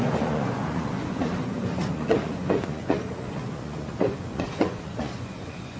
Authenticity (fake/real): fake